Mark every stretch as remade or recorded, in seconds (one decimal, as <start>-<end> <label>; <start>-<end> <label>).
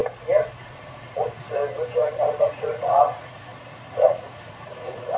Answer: 0.0-0.6 recorded; 0.6-1.6 remade; 1.6-2.4 recorded; 2.4-5.2 remade